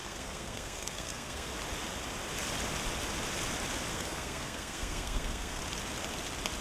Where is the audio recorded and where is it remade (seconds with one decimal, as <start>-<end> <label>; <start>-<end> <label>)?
0.0-1.5 remade; 1.5-3.9 recorded; 3.9-5.6 remade; 5.6-6.6 recorded